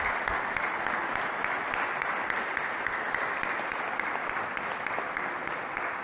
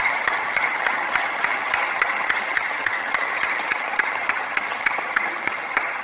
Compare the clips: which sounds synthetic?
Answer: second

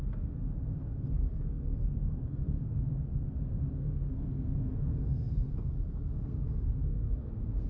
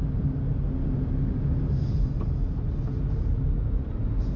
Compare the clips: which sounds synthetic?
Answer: first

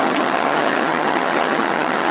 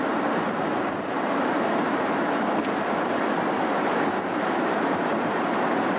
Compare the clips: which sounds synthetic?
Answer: first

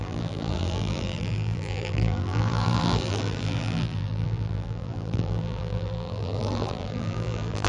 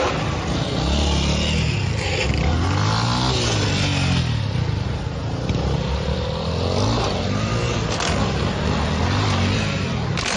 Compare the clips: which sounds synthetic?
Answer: first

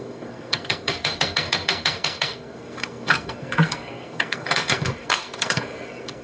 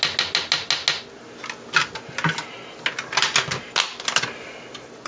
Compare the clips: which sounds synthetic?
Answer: first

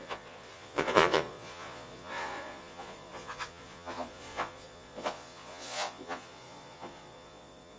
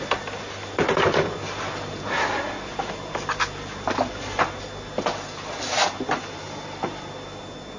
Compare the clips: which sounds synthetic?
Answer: first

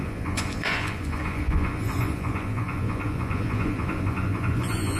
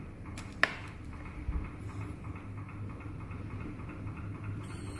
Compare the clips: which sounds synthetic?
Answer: first